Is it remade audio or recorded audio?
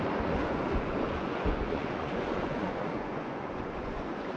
remade